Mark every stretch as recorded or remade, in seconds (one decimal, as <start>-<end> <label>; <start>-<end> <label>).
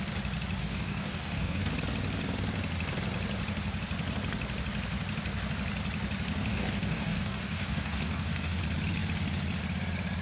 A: 0.0-0.6 recorded; 0.6-1.7 remade; 1.7-6.5 recorded; 6.5-8.6 remade; 8.6-10.2 recorded